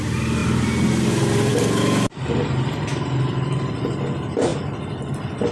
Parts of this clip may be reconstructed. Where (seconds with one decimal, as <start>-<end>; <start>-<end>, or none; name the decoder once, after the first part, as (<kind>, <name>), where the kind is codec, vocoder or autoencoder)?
0.4-1.1 (vocoder, BigVGAN v2); 4.5-5.5